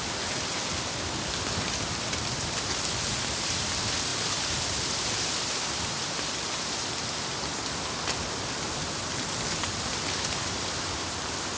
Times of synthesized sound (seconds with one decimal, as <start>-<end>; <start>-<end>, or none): none